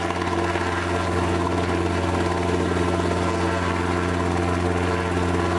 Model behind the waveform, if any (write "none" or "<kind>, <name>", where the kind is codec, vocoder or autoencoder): none